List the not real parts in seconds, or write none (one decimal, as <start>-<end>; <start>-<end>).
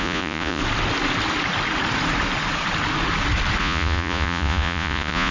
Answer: 0.0-0.6; 3.6-5.3